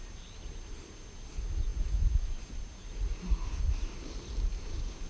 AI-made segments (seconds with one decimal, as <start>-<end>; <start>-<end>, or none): none